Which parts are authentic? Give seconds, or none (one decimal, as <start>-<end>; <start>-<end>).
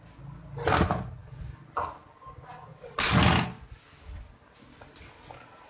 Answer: 0.0-5.7